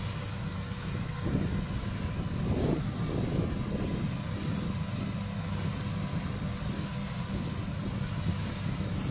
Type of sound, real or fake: real